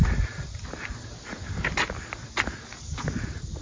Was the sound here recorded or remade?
recorded